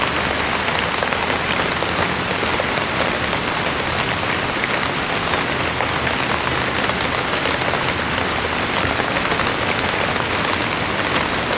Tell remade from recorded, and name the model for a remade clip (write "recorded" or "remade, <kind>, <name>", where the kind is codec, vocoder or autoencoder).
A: recorded